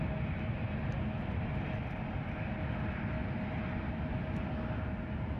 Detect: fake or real real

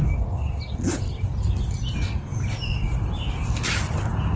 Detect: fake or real real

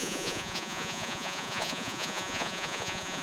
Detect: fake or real fake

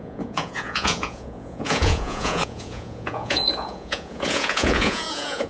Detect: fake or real fake